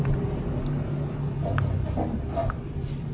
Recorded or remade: recorded